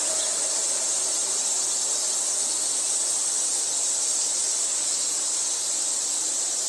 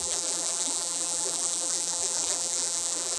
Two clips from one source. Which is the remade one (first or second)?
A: second